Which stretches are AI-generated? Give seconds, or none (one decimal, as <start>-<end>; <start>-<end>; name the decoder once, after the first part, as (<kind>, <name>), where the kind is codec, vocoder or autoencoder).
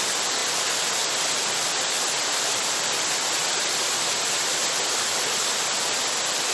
none